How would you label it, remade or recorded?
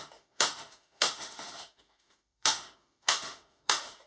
remade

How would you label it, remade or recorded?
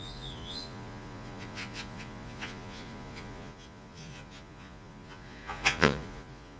remade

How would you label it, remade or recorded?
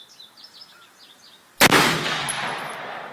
recorded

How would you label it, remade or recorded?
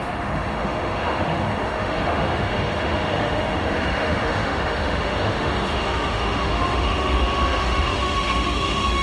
remade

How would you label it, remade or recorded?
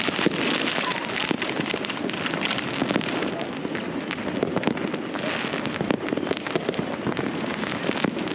recorded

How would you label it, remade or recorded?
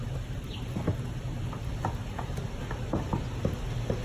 recorded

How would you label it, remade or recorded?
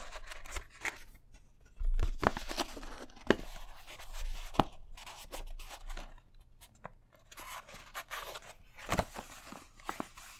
recorded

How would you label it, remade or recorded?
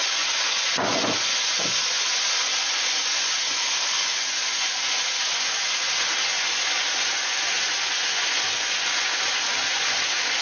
remade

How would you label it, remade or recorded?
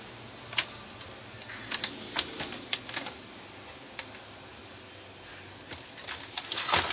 recorded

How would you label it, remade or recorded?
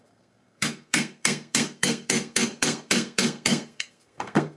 remade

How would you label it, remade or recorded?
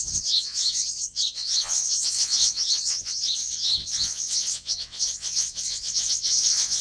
remade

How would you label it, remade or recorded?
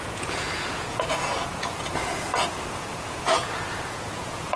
remade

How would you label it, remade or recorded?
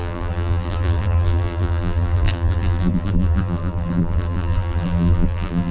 remade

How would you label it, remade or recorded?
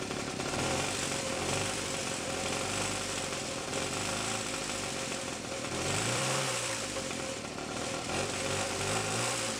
remade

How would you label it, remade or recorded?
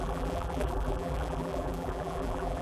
remade